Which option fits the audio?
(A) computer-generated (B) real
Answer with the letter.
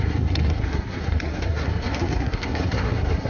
A